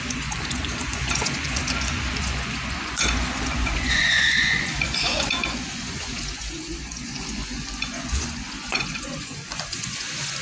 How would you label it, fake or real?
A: fake